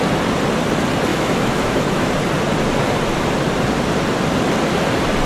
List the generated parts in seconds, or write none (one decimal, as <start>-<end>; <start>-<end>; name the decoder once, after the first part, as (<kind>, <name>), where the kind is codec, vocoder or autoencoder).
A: 1.1-2.1 (autoencoder, DAC-VAE)